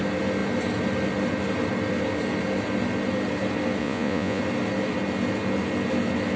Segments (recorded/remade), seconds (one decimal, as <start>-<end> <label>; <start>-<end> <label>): 0.0-3.8 recorded; 3.8-4.4 remade; 4.4-6.4 recorded